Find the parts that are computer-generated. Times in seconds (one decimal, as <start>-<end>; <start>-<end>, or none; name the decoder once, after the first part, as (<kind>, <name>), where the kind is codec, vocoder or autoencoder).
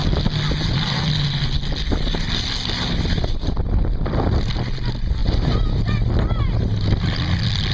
none